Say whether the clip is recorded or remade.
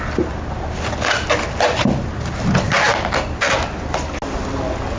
recorded